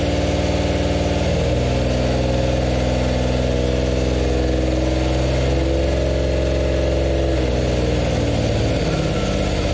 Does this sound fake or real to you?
real